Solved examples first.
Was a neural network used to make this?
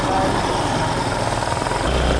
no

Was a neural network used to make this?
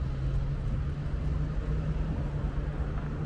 no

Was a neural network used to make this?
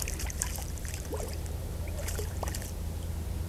yes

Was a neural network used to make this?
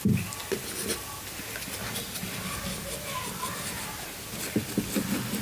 no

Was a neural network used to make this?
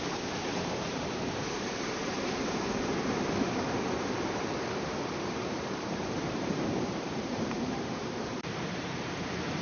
yes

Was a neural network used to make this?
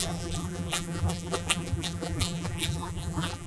yes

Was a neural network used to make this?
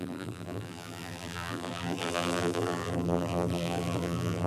yes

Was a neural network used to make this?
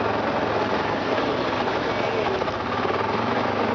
no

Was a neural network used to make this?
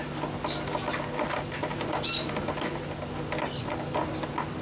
no